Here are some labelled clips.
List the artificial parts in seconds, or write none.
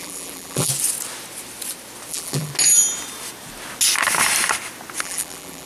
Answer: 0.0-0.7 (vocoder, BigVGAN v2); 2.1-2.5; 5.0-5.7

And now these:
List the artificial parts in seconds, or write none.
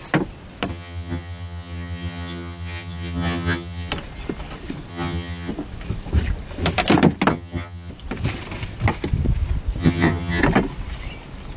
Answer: 0.7-3.9 (vocoder, HiFi-GAN); 4.9-5.5; 7.3-7.9; 9.8-10.4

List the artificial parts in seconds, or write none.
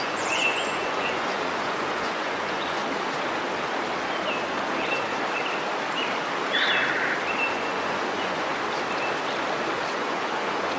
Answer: 0.0-2.8 (vocoder, Vocos); 7.5-8.5; 9.9-10.8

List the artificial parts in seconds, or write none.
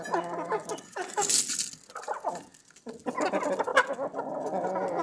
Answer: none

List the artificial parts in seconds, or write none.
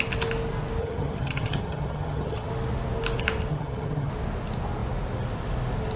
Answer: 0.8-2.5 (vocoder, HiFi-GAN); 3.5-4.1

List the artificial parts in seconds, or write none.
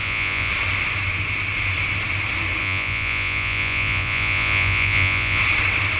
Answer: 0.0-0.5 (vocoder, Vocos); 2.6-5.4